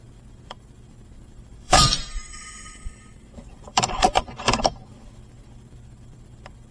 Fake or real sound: fake